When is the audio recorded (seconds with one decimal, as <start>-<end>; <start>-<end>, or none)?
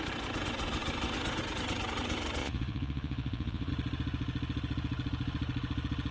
0.0-2.4; 3.7-6.1